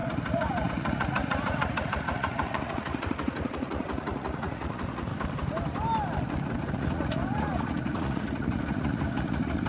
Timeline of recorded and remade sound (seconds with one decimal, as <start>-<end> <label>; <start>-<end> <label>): 0.0-5.1 remade; 5.1-6.7 recorded; 6.7-9.7 remade